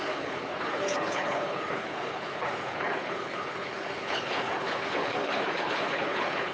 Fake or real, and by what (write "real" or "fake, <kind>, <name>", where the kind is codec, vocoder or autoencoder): fake, codec, HILCodec